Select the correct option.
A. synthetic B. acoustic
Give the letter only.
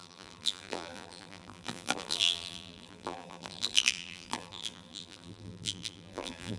A